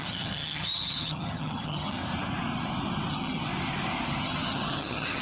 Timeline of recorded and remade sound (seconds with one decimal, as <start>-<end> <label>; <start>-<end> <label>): 0.0-2.0 remade; 2.0-3.1 recorded; 3.1-3.5 remade; 3.5-4.2 recorded; 4.2-5.2 remade